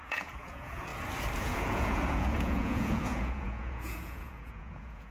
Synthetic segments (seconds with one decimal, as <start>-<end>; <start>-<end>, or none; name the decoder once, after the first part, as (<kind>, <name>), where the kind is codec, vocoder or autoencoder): 0.0-0.9 (vocoder, Vocos); 1.4-5.1